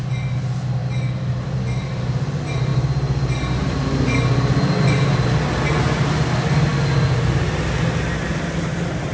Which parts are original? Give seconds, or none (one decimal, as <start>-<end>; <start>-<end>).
0.0-9.1